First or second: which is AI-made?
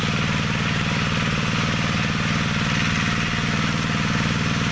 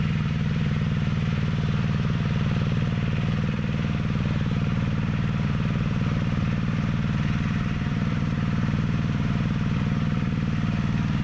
second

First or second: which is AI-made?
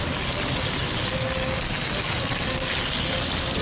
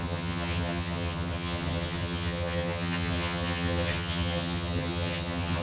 second